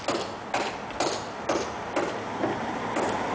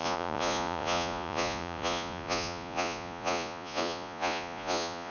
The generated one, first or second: second